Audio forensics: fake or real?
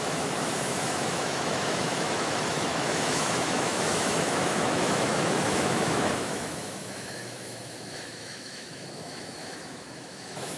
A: fake